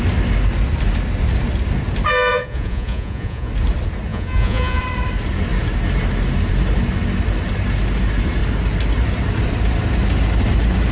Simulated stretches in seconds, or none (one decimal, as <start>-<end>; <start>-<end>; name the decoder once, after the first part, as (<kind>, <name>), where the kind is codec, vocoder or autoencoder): 2.3-3.5 (vocoder, Vocos); 4.1-4.8